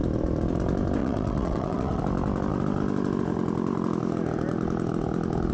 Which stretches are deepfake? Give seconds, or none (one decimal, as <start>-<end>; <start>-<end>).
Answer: 1.0-2.0